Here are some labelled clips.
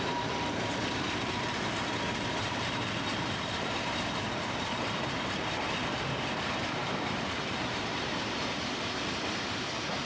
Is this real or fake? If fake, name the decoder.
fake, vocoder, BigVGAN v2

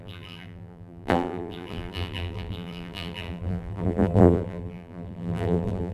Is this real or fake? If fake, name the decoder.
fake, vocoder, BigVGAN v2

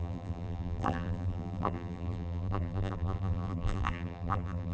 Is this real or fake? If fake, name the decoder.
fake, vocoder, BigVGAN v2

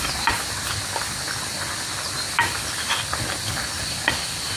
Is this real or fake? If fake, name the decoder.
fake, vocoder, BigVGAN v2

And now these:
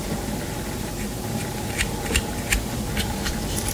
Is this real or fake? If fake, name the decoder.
fake, vocoder, BigVGAN v2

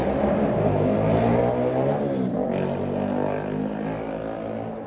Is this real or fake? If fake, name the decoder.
real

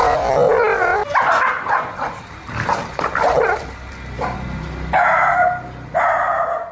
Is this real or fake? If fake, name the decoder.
real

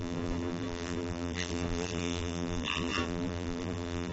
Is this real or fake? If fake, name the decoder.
fake, vocoder, BigVGAN v2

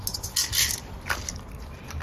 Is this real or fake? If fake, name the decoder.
real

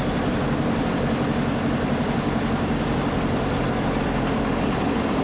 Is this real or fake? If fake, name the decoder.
fake, vocoder, BigVGAN v2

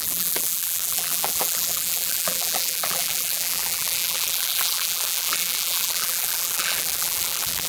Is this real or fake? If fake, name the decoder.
fake, vocoder, BigVGAN v2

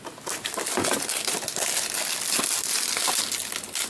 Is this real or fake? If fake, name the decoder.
real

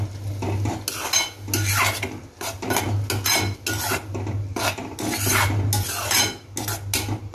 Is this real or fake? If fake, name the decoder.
real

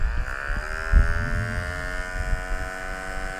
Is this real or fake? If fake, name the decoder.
real